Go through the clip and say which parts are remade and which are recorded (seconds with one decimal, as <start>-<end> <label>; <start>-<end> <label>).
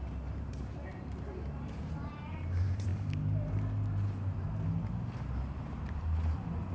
0.0-2.9 remade; 2.9-5.6 recorded; 5.6-6.7 remade